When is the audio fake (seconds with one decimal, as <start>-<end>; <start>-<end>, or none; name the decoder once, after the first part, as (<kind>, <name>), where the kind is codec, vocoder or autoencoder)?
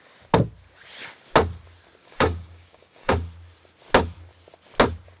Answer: 2.0-3.1 (codec, DAC)